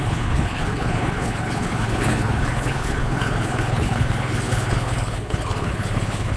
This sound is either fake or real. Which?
fake